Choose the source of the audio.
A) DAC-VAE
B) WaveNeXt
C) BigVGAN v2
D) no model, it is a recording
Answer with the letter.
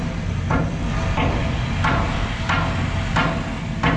D